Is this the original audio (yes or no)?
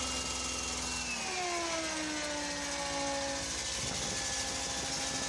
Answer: yes